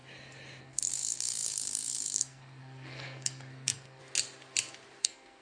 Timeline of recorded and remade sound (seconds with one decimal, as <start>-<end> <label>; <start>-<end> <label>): 0.0-0.6 recorded; 0.6-4.0 remade; 4.0-5.0 recorded; 5.0-5.4 remade